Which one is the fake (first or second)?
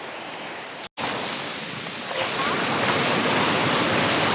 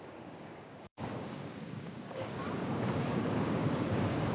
second